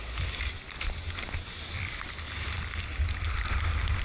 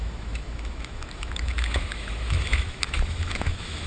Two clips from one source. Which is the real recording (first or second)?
first